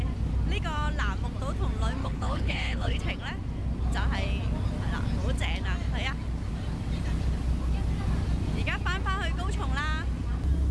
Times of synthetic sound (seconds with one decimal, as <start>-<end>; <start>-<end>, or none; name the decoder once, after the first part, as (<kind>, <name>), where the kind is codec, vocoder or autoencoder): 2.0-3.0 (codec, HILCodec)